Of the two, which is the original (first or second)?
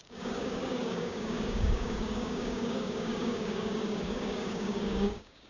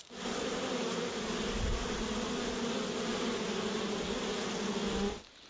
second